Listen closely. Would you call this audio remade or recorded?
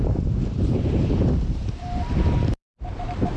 remade